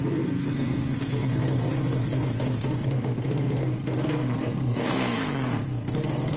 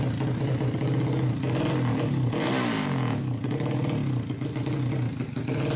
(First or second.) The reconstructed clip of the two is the first